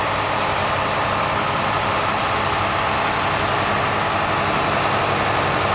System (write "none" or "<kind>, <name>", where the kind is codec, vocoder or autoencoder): none